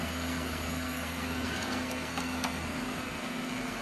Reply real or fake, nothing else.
fake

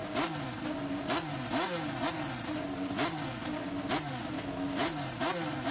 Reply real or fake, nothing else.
real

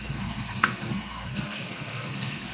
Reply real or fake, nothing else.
fake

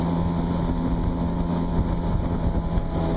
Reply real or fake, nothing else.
real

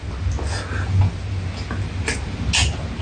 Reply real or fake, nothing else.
real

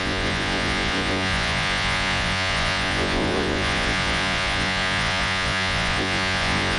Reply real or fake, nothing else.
fake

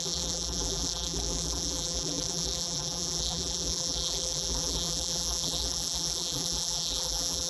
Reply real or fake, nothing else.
fake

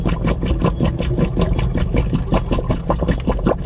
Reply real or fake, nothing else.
real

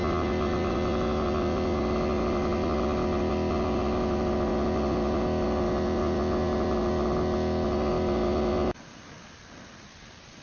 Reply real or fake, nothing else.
real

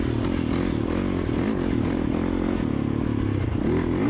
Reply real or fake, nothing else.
real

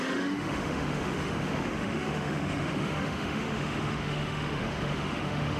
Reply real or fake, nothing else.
fake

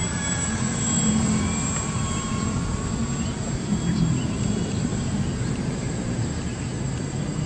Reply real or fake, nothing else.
fake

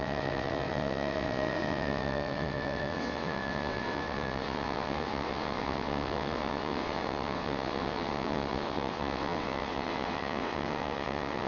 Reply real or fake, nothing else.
fake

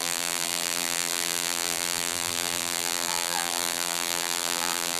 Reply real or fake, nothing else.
fake